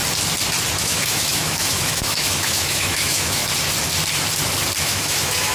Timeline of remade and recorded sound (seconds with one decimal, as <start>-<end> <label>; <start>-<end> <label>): 0.0-0.8 recorded; 0.8-3.4 remade; 3.4-4.8 recorded; 4.8-5.5 remade